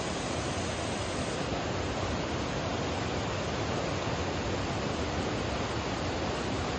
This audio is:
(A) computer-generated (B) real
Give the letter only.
B